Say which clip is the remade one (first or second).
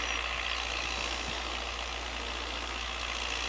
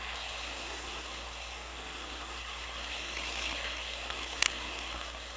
second